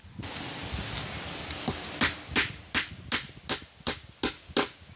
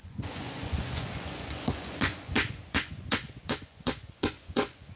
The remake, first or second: second